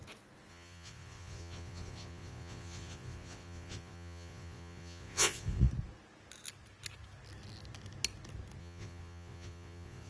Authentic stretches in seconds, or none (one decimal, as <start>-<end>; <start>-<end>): 0.0-0.5; 5.7-8.6